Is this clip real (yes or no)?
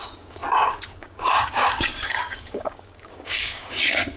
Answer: no